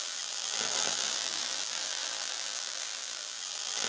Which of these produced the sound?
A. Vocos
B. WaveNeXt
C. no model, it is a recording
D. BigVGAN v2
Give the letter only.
D